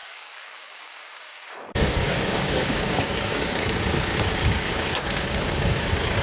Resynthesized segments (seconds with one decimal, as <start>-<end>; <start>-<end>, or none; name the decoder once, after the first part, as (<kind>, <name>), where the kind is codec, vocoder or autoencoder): 0.0-6.2 (codec, DAC)